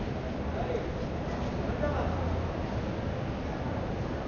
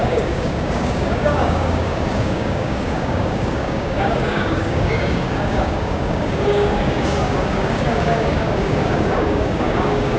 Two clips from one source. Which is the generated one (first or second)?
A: second